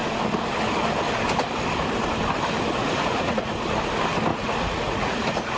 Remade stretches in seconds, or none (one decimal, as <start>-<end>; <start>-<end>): 2.8-3.5; 4.3-5.6

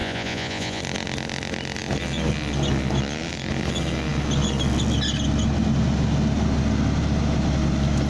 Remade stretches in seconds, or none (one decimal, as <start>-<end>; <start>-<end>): 0.0-0.8

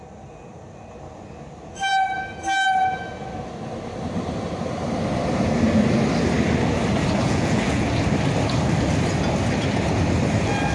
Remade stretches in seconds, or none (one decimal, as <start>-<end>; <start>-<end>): 7.2-7.9